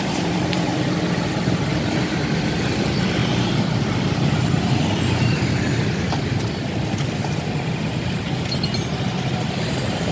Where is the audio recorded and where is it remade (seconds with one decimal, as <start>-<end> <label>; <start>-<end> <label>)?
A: 0.0-0.7 remade; 0.7-1.4 recorded; 1.4-3.2 remade; 3.2-3.7 recorded; 3.7-10.1 remade